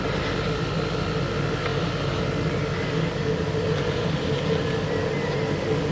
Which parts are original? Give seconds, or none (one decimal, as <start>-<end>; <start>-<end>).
0.0-5.9